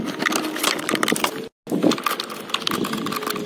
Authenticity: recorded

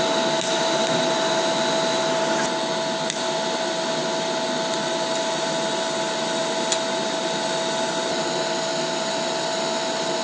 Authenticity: recorded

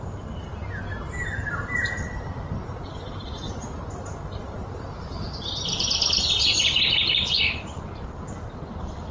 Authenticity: recorded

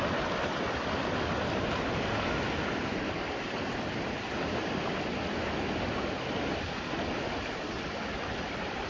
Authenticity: recorded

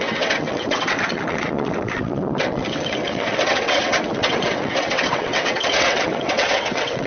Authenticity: remade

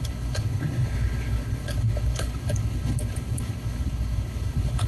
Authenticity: remade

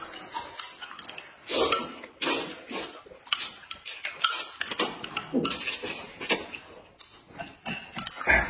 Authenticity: recorded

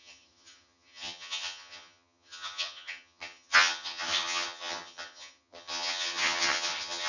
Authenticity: remade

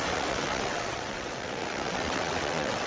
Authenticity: remade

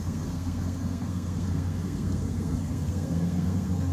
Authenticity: remade